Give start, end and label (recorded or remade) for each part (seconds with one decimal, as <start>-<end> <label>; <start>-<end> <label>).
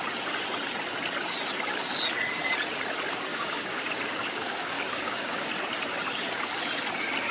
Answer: 0.0-3.3 recorded; 3.3-5.5 remade; 5.5-7.3 recorded